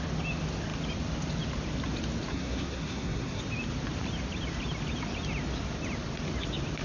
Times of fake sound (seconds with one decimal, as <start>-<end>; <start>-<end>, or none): 2.3-3.4